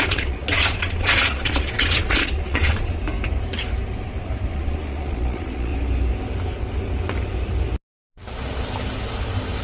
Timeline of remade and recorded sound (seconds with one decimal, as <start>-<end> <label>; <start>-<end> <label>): 0.0-3.0 remade; 3.0-4.5 recorded; 4.5-5.7 remade; 5.7-9.6 recorded